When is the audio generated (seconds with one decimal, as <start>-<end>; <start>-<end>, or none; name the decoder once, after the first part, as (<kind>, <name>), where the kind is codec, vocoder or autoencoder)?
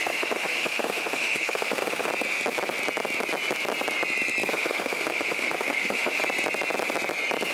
0.0-2.1 (autoencoder, DAC-VAE); 4.5-6.2